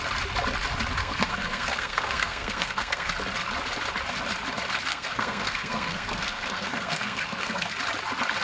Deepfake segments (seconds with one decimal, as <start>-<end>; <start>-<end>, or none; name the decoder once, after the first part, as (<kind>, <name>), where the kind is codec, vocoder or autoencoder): 1.0-3.1 (codec, SNAC); 4.9-7.7